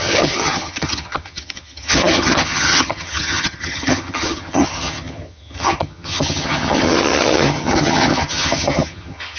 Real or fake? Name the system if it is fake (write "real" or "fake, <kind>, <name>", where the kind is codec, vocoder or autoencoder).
fake, vocoder, HiFi-GAN